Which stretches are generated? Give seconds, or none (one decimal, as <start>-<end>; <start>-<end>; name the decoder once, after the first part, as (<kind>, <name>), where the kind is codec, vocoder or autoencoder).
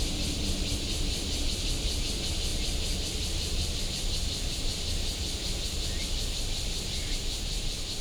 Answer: 2.5-3.8 (vocoder, BigVGAN v2); 5.1-6.0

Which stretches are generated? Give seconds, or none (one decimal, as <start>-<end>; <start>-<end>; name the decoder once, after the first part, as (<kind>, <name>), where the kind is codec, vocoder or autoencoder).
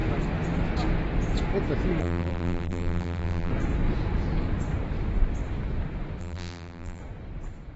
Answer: 2.0-3.5 (vocoder, BigVGAN v2); 6.2-7.0